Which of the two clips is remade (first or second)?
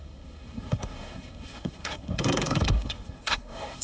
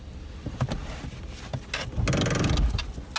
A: first